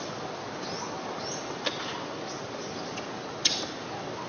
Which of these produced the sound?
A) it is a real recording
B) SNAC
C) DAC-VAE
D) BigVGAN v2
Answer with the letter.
A